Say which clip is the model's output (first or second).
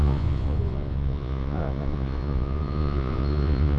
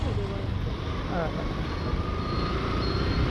first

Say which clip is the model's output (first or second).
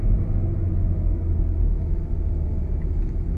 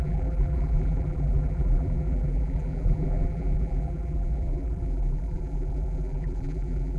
second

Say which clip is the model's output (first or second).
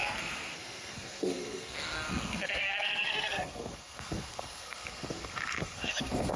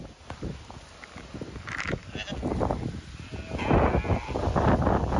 first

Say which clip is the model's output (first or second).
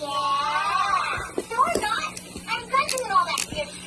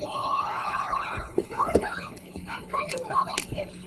second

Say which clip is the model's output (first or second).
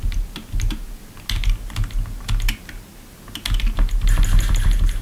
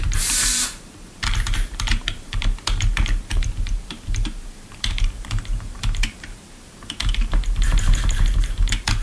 second